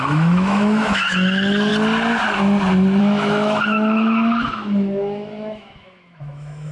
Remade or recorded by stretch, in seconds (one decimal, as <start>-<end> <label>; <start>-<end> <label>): 0.0-1.7 remade; 1.7-3.0 recorded; 3.0-6.7 remade